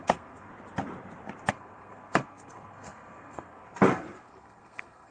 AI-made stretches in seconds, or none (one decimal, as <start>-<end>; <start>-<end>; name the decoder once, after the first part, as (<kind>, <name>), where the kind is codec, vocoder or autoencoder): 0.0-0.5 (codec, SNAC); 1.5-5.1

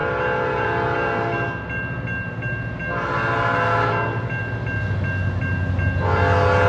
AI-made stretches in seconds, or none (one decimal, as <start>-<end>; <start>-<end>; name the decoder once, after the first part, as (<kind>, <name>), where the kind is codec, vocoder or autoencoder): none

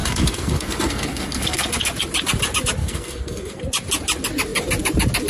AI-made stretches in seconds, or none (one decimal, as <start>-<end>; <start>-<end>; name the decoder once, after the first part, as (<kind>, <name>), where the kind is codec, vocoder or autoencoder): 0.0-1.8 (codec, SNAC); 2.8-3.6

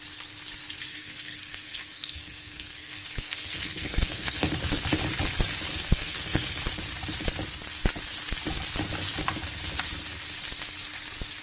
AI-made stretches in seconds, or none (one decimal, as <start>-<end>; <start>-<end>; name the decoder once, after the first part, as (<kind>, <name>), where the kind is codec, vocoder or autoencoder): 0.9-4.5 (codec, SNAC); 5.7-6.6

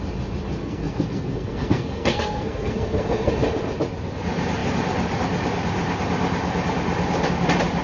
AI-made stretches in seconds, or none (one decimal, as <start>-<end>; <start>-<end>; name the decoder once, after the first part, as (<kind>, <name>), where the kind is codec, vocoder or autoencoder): 0.6-3.3 (codec, SNAC)

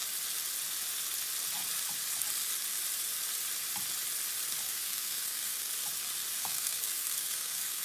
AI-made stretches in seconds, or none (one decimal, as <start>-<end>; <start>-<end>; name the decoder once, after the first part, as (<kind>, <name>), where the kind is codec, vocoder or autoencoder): 4.6-5.7 (codec, SNAC); 6.4-7.8

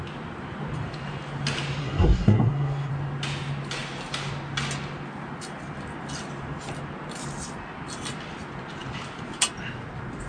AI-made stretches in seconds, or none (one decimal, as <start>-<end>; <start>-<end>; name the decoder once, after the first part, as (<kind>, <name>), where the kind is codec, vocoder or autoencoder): 1.8-2.9 (codec, SNAC)

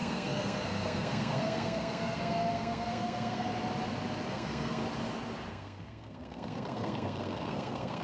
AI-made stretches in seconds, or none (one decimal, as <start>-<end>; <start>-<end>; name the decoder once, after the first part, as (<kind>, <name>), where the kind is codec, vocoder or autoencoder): 0.0-3.5 (codec, SNAC); 4.3-4.8; 5.5-8.0